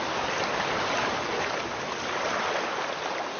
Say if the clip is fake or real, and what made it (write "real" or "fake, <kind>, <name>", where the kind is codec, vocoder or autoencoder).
real